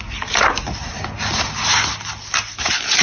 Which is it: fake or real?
real